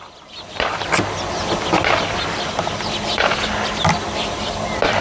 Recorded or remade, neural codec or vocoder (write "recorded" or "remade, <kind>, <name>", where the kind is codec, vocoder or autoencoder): recorded